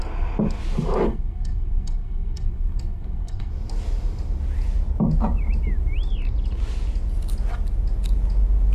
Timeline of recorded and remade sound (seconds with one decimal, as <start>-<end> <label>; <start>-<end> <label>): 0.0-1.1 recorded; 1.1-3.5 remade; 3.5-8.7 recorded